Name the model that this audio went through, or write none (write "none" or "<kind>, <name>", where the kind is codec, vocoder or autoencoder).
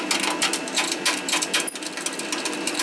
none